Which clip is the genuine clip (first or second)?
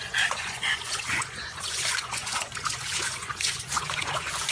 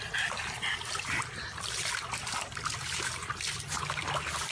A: second